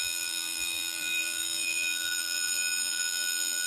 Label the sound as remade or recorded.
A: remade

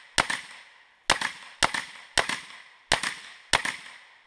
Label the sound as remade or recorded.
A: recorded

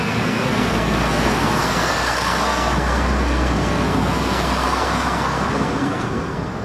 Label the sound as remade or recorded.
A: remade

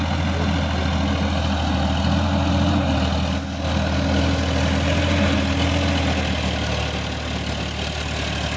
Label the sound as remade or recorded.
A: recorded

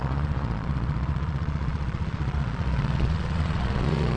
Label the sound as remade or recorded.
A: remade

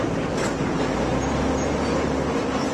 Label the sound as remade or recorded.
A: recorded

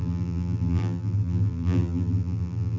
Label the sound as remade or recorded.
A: remade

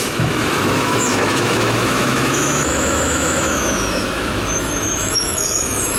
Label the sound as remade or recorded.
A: remade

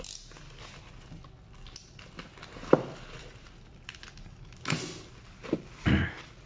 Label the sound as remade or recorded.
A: recorded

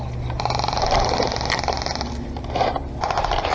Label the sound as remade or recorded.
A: recorded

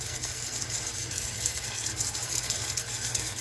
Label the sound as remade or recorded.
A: remade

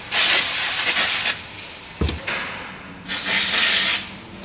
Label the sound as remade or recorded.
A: recorded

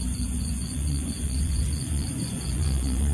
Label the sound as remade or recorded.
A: remade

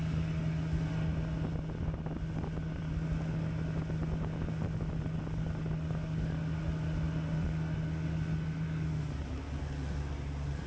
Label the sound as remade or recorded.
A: recorded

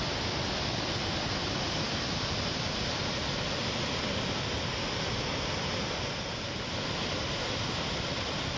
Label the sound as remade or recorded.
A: recorded